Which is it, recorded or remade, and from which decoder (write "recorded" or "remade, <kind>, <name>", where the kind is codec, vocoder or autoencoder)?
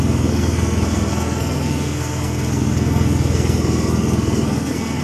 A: remade, codec, SNAC